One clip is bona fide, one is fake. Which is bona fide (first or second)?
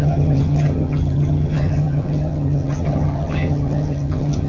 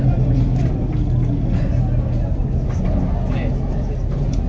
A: second